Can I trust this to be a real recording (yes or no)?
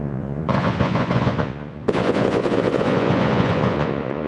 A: no